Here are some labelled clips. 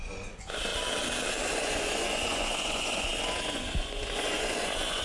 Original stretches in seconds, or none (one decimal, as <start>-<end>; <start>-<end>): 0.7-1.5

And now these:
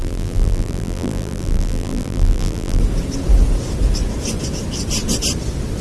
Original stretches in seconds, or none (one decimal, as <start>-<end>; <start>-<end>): 2.8-5.8

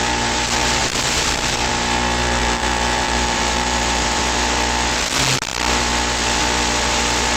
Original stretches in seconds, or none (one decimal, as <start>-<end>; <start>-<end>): 0.0-0.8; 1.7-2.4; 4.2-7.4

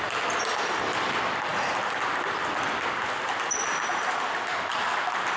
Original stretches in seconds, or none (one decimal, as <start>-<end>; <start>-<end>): 0.0-5.4

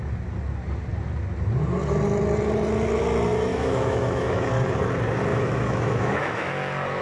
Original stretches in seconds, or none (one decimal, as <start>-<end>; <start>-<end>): 0.0-3.5; 4.5-5.3; 6.5-7.0

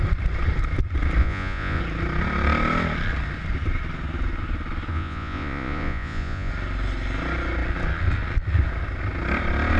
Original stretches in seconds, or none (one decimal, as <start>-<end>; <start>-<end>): 0.0-1.2; 1.8-4.9; 6.5-9.8